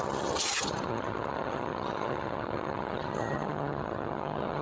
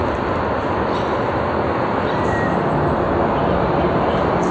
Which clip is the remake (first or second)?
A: first